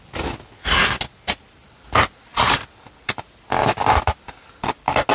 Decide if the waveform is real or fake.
real